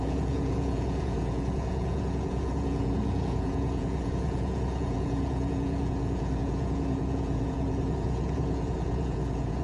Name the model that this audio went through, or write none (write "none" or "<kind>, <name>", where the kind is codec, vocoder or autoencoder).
vocoder, Vocos